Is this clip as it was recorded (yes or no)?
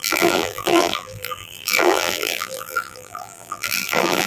no